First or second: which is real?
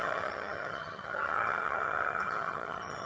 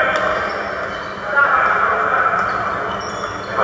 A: second